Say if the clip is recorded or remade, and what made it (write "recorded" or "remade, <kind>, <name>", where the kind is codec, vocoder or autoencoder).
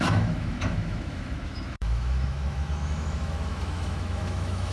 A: remade, autoencoder, DAC-VAE